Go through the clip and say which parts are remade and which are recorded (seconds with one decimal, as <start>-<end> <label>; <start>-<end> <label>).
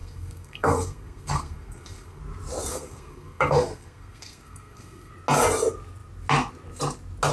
0.0-2.2 remade; 2.2-2.7 recorded; 2.7-5.1 remade; 5.1-7.3 recorded